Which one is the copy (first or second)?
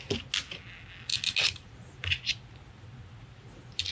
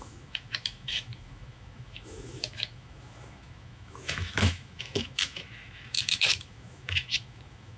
second